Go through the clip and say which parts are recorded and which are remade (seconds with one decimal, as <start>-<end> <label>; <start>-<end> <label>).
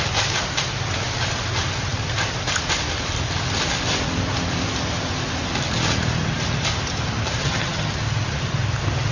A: 0.0-7.4 recorded; 7.4-7.9 remade; 7.9-9.1 recorded